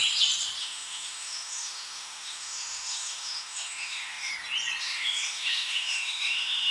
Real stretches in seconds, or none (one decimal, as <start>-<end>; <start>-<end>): 0.0-0.6; 4.3-4.8